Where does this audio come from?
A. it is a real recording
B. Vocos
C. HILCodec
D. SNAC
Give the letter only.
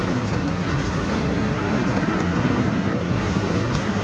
D